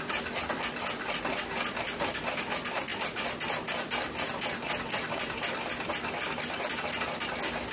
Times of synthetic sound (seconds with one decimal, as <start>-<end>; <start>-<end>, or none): none